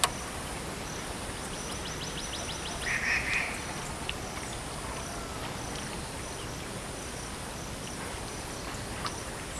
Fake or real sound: real